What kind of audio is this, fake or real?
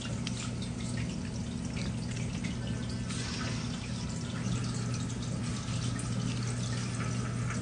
real